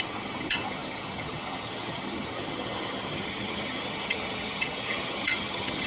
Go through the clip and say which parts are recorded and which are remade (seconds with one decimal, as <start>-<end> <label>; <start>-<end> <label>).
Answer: 0.0-5.9 remade

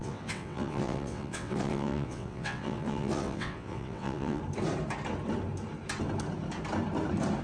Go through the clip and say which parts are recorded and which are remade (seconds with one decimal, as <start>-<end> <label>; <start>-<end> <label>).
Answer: 0.0-4.4 remade; 4.4-7.4 recorded

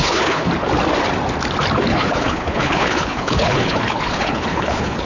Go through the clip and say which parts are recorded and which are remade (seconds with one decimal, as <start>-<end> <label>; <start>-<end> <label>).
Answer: 0.0-0.5 remade; 0.5-1.9 recorded; 1.9-5.1 remade

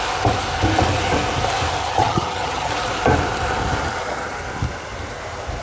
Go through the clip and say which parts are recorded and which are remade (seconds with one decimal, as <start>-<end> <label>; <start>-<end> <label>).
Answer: 0.0-1.8 recorded; 1.8-2.7 remade; 2.7-5.6 recorded

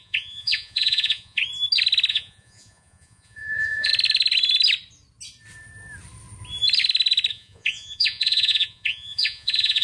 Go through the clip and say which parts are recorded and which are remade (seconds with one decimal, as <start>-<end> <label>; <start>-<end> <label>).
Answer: 0.0-1.4 remade; 1.4-2.1 recorded; 2.1-3.9 remade; 3.9-7.3 recorded; 7.3-9.8 remade